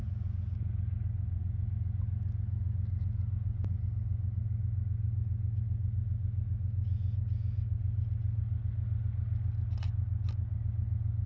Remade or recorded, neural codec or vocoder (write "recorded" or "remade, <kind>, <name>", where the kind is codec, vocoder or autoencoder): recorded